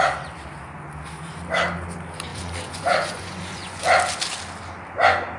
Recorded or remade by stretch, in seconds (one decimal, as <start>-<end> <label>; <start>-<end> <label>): 0.0-2.3 recorded; 2.3-3.8 remade; 3.8-5.4 recorded